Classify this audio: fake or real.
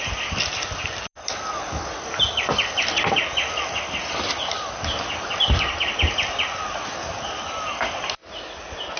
real